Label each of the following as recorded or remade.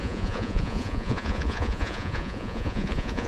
remade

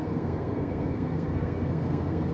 remade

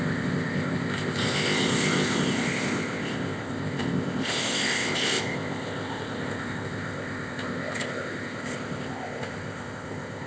remade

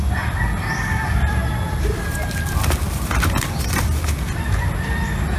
remade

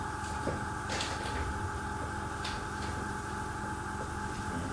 recorded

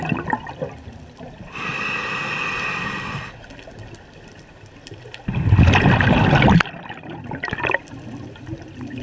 recorded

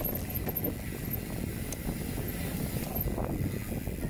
recorded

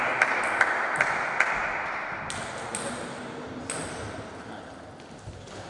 recorded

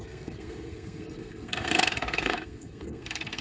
remade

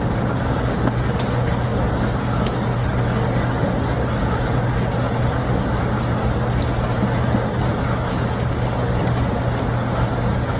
recorded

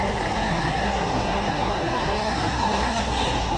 remade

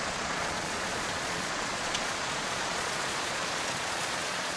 remade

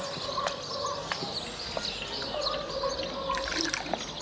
recorded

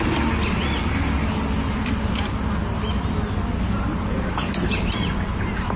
recorded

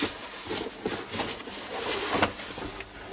recorded